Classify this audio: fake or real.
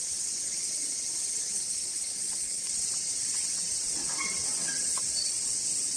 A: fake